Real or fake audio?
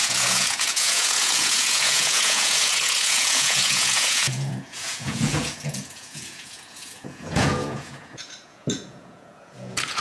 fake